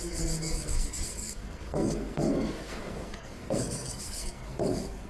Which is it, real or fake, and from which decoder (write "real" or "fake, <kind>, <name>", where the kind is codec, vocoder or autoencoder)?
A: fake, codec, SNAC